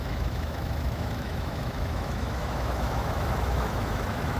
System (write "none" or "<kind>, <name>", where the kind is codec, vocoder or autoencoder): autoencoder, DAC-VAE